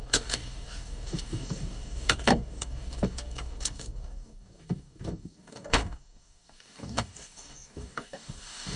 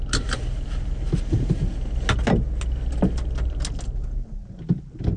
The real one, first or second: second